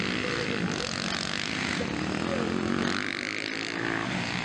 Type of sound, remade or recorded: recorded